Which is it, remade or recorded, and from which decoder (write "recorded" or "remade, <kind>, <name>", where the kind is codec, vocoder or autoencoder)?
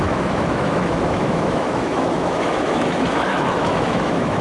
remade, autoencoder, DAC-VAE